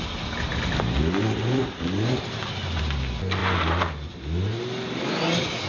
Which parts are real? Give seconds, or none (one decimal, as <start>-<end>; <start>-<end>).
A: 0.0-5.7